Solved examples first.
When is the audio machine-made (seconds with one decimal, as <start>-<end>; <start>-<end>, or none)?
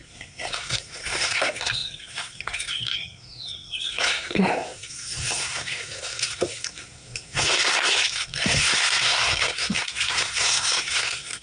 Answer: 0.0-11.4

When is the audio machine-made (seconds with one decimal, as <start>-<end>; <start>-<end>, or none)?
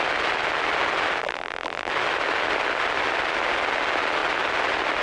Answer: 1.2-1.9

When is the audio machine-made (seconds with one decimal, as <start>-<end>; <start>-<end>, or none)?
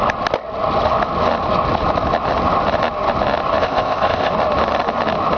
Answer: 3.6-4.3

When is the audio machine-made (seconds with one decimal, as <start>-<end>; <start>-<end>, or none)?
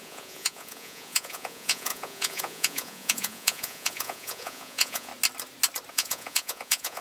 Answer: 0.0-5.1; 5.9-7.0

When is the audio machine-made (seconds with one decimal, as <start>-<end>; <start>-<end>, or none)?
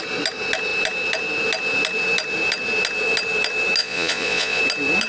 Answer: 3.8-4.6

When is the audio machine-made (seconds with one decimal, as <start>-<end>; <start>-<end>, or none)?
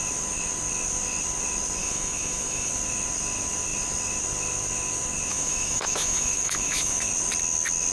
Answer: 1.8-2.7; 5.3-7.1